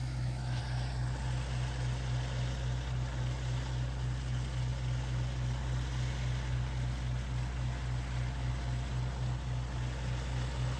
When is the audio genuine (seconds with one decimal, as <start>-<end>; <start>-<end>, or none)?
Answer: 0.6-10.8